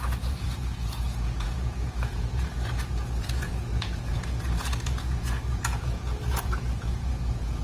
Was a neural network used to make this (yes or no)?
yes